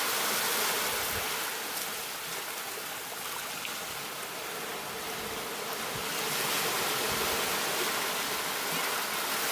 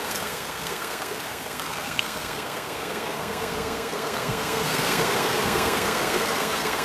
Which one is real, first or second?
first